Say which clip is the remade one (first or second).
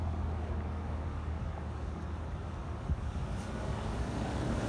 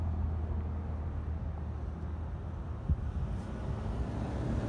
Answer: first